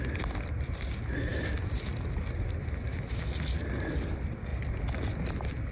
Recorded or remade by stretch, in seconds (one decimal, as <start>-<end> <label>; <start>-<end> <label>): 0.0-5.7 recorded